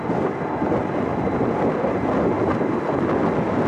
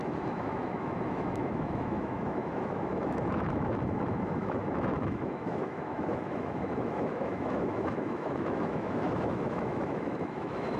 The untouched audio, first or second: first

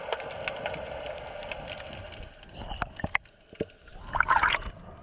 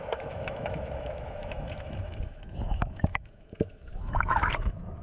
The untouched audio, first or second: first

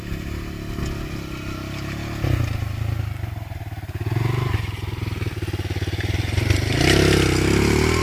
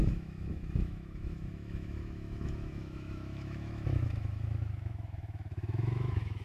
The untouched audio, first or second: first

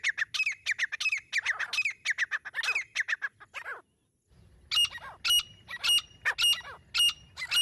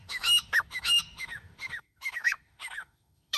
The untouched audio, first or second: first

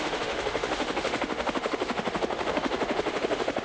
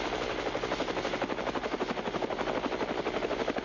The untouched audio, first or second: second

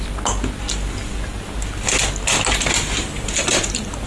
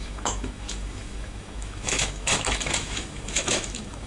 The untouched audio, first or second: first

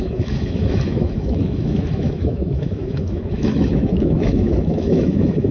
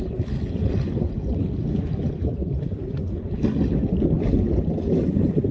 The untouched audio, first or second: second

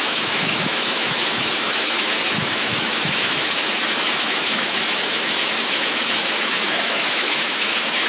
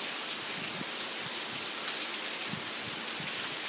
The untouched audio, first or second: second